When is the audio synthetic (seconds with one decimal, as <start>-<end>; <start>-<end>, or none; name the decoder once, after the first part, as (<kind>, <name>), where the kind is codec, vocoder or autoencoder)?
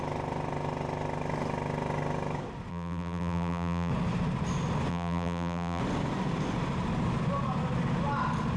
2.7-3.9 (vocoder, BigVGAN v2); 4.9-5.8